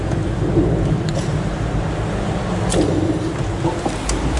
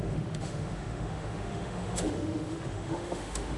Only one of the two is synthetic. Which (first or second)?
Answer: second